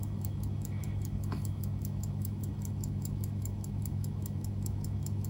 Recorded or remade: remade